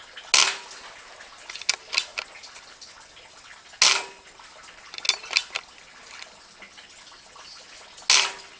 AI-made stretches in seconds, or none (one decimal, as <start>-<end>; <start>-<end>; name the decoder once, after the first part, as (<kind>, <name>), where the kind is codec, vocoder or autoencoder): none